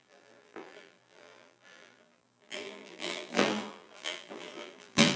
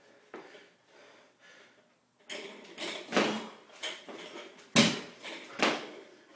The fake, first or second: first